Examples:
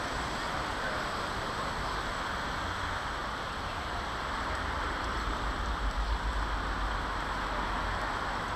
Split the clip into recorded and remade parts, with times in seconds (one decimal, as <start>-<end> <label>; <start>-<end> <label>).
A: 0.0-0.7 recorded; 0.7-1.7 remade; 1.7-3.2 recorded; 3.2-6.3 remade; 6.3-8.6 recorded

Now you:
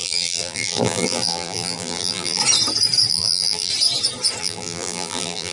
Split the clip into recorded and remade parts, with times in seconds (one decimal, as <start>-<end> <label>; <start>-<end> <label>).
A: 0.0-2.4 remade; 2.4-3.1 recorded; 3.1-3.7 remade; 3.7-4.4 recorded; 4.4-5.5 remade

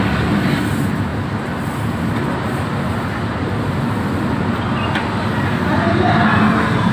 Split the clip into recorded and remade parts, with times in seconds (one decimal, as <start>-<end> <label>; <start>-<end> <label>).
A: 0.0-6.9 recorded

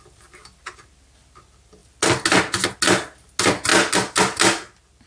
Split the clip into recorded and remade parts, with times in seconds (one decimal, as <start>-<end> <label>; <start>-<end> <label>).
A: 0.0-5.1 recorded